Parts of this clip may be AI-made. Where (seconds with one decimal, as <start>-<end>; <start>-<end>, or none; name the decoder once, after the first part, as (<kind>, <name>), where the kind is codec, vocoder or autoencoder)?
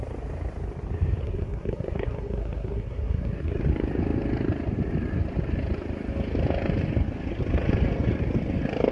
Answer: 1.2-3.6 (codec, SNAC)